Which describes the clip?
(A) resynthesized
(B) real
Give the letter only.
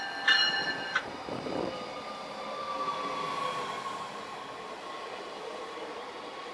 B